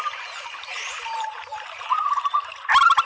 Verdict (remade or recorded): remade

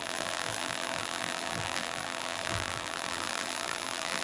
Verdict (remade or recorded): remade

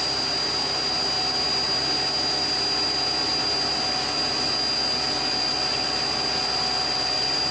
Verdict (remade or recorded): recorded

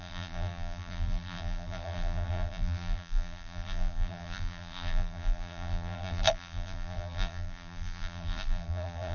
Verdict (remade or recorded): remade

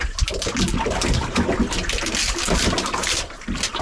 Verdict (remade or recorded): recorded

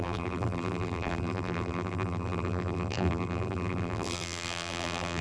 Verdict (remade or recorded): remade